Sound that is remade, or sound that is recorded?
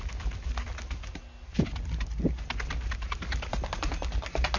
recorded